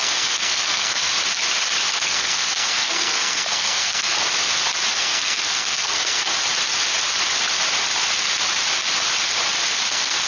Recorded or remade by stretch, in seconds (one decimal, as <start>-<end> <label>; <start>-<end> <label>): 0.0-1.1 remade; 1.1-1.9 recorded; 1.9-4.2 remade; 4.2-4.9 recorded; 4.9-6.3 remade; 6.3-9.9 recorded; 9.9-10.3 remade